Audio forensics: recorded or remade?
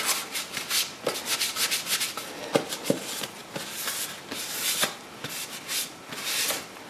recorded